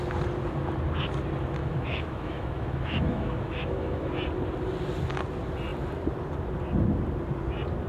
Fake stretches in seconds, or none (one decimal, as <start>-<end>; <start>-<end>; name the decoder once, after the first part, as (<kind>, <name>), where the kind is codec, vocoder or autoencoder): 1.6-4.1 (autoencoder, DAC-VAE)